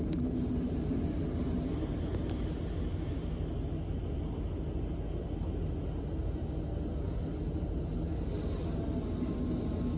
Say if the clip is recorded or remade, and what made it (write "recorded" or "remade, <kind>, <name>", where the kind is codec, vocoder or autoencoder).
recorded